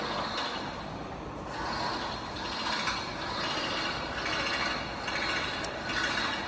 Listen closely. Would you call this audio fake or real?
real